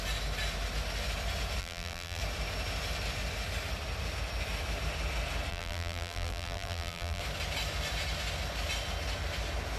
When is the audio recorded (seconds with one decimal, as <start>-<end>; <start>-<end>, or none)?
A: 0.0-1.6; 2.2-5.5; 7.2-9.8